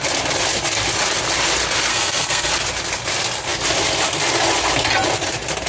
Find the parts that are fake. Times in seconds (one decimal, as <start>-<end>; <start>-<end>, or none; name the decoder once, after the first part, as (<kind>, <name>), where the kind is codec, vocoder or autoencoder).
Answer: 1.9-2.5 (codec, SNAC)